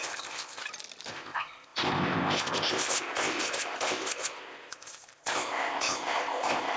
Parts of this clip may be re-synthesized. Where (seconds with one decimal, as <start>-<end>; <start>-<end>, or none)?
0.0-0.6; 1.1-6.8